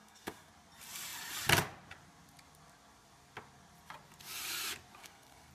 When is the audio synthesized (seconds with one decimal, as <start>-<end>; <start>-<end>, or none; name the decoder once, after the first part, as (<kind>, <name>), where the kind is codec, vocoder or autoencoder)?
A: 0.0-0.5 (codec, SNAC); 5.0-5.5